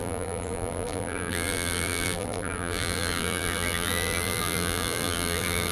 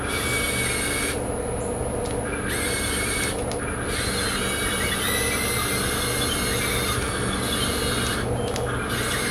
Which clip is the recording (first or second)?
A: second